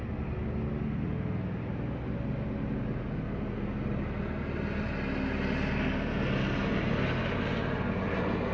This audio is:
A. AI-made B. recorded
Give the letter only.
B